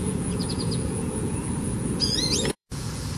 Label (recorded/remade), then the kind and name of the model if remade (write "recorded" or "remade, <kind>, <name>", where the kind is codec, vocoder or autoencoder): remade, vocoder, Vocos